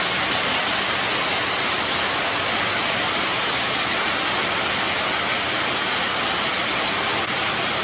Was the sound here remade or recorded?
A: recorded